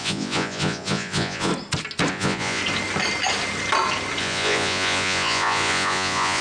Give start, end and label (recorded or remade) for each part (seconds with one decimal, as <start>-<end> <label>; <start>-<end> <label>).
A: 0.0-1.5 remade; 1.5-2.1 recorded; 2.1-2.6 remade; 2.6-4.2 recorded; 4.2-6.4 remade